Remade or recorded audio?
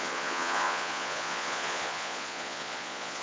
remade